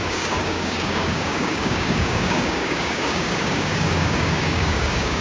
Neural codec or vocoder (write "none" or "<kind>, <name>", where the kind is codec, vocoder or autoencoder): codec, DAC